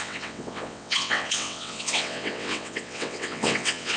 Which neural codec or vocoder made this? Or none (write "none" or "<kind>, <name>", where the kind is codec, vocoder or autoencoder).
vocoder, WaveNeXt